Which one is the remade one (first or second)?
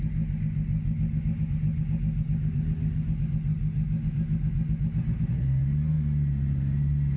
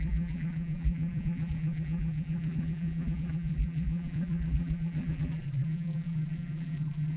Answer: second